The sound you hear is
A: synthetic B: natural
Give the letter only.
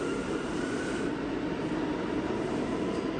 B